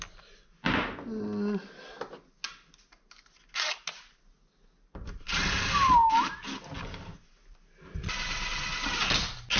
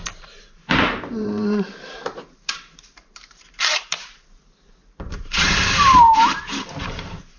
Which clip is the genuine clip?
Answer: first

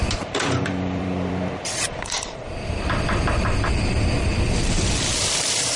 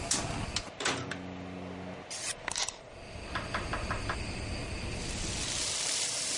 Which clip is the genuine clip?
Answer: second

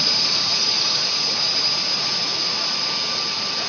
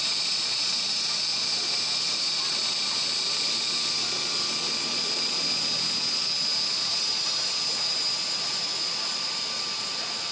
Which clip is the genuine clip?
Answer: second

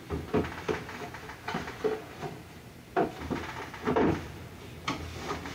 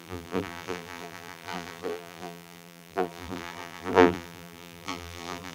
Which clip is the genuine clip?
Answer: first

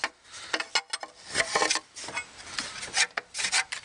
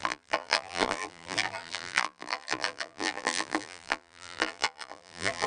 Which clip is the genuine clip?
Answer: first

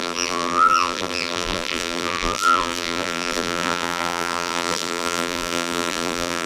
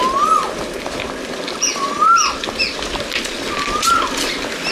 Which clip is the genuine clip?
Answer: second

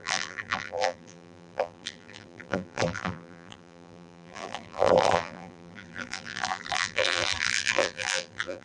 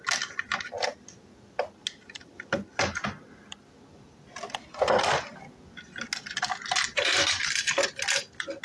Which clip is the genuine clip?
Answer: second